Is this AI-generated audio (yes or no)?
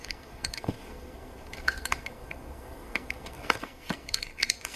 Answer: yes